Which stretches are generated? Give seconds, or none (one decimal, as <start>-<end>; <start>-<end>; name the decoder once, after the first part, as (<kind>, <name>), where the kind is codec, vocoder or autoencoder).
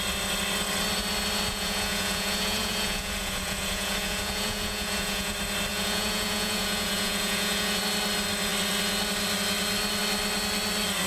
1.5-5.3 (vocoder, Vocos); 5.7-7.8